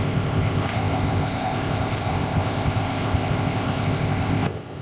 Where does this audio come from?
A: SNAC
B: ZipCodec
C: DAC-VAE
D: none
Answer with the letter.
B